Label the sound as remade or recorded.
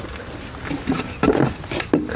recorded